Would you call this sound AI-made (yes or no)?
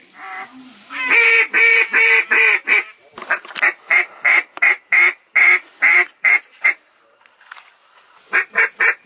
no